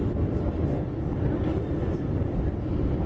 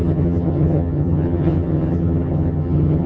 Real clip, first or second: first